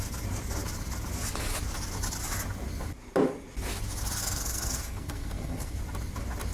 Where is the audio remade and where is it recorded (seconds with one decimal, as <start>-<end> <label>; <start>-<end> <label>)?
0.0-4.2 recorded; 4.2-5.8 remade; 5.8-6.5 recorded